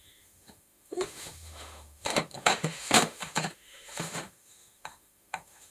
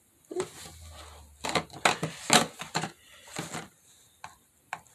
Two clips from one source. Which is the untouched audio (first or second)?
second